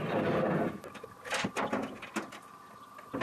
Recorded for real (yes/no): yes